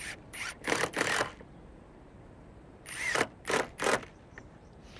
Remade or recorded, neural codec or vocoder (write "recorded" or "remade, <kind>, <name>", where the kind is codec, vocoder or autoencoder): remade, vocoder, BigVGAN v2